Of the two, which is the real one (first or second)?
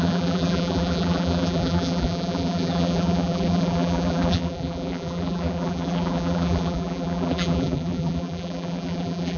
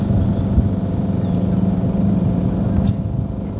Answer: second